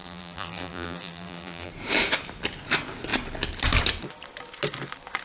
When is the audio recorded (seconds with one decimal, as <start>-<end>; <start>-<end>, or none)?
1.7-5.2

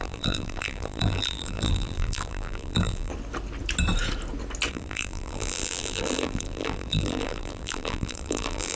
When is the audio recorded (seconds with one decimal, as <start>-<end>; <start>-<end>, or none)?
3.1-4.7

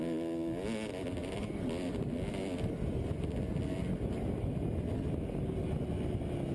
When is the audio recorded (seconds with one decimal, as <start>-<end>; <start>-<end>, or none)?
0.0-1.2; 2.0-6.5

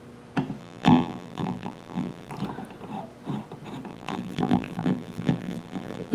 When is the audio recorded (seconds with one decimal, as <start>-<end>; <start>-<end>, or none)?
0.0-0.6; 2.3-3.9